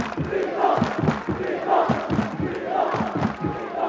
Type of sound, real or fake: real